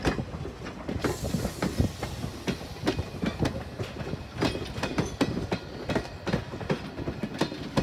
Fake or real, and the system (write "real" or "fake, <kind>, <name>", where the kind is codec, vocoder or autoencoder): real